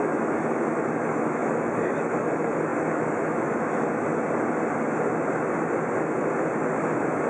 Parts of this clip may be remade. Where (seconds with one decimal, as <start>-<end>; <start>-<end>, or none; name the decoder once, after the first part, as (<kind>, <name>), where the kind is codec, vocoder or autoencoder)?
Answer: 0.0-4.1 (autoencoder, DAC-VAE); 6.6-7.3